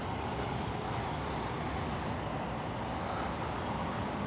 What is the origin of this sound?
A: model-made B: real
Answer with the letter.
B